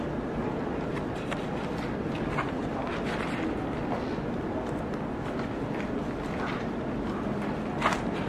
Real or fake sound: real